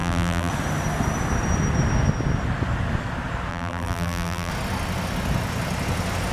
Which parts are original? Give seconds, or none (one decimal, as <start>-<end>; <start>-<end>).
0.5-3.5; 4.5-6.3